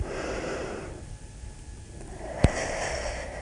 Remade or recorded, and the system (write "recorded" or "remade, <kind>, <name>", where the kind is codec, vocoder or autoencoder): recorded